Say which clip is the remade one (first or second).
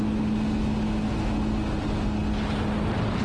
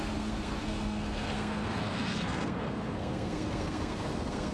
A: second